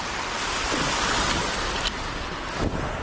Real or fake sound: real